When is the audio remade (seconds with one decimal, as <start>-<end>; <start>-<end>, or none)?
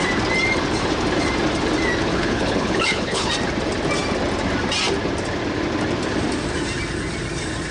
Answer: 2.1-3.3